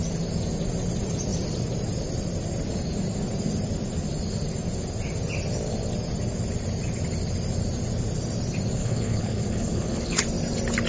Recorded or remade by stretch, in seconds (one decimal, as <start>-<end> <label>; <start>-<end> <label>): 0.0-8.8 recorded; 8.8-10.2 remade; 10.2-10.9 recorded